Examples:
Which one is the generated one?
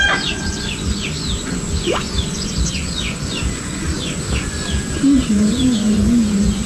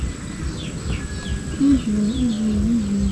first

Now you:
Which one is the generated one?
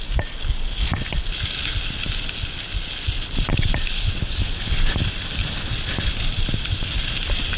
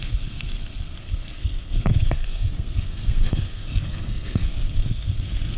second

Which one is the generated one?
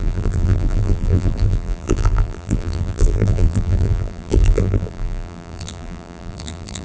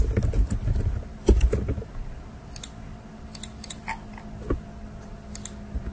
first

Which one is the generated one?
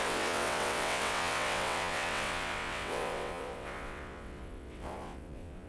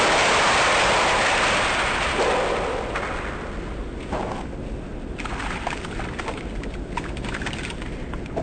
first